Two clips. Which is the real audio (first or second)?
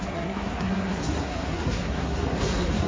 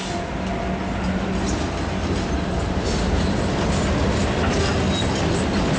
second